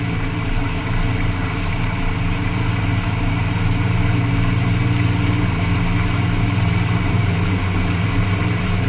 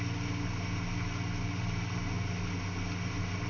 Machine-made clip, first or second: first